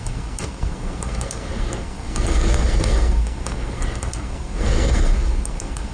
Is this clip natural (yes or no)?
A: no